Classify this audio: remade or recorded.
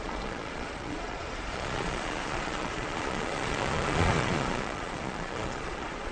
remade